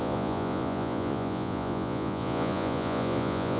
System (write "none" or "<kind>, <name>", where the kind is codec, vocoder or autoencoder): vocoder, Vocos